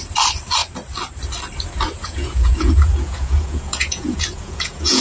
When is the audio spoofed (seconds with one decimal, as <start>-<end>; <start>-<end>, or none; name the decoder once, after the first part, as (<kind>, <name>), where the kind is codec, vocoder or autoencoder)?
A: 2.0-5.0 (vocoder, Vocos)